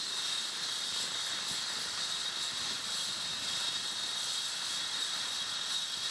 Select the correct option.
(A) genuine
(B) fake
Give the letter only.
A